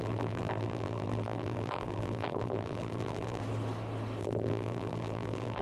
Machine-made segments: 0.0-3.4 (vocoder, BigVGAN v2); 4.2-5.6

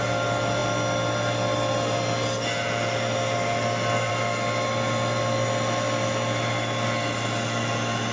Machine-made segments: none

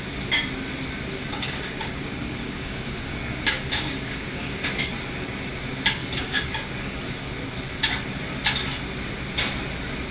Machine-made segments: 1.3-4.9 (codec, DAC); 6.0-7.3

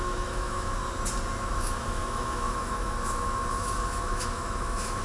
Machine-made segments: 0.0-0.8 (autoencoder, DAC-VAE); 1.4-5.0